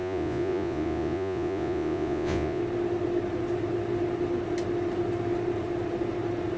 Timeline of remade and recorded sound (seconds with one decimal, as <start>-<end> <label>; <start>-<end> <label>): 0.0-2.6 remade; 2.6-6.6 recorded

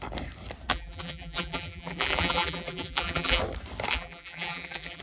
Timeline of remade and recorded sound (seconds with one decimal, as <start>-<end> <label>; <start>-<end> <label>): 0.0-0.7 recorded; 0.7-3.4 remade; 3.4-3.9 recorded; 3.9-5.0 remade

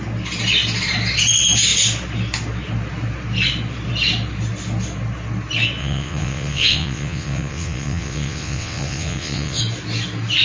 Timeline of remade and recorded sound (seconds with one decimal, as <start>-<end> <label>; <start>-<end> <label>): 0.0-5.8 recorded; 5.8-9.6 remade; 9.6-10.4 recorded

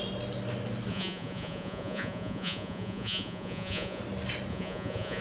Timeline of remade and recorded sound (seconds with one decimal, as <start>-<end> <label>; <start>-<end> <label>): 0.0-0.9 recorded; 0.9-4.0 remade; 4.0-4.5 recorded; 4.5-5.2 remade